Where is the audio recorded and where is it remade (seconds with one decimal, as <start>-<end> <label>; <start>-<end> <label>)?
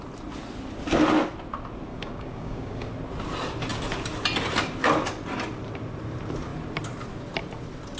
0.0-1.9 recorded; 1.9-2.9 remade; 2.9-8.0 recorded